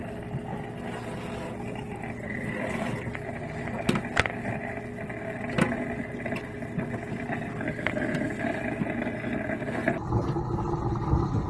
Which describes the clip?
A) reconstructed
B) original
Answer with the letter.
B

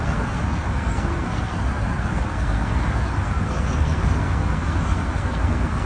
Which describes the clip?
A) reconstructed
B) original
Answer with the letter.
A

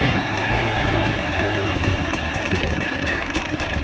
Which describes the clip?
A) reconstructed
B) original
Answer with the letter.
A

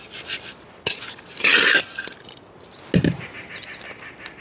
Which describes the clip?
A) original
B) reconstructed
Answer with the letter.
A